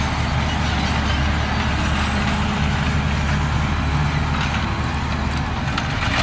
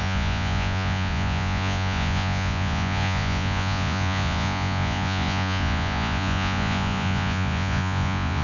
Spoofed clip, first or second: second